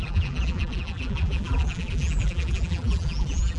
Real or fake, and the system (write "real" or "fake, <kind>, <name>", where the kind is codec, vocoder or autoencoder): fake, vocoder, BigVGAN v2